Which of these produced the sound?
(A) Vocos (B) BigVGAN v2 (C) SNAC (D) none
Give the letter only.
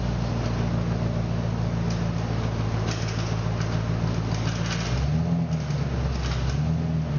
D